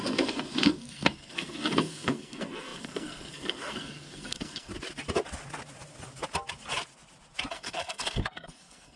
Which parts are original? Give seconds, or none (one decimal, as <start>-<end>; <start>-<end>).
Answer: 4.7-7.5